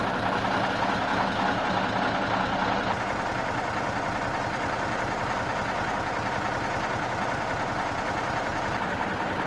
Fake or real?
real